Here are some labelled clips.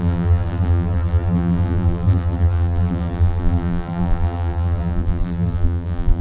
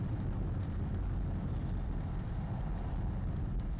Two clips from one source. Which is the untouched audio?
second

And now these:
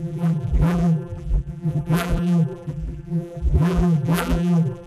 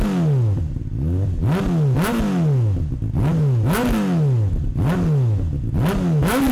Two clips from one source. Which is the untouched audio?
second